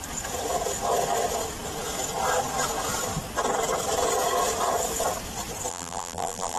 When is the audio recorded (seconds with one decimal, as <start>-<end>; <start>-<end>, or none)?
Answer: 0.0-5.7